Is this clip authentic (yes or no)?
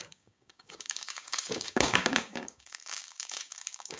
no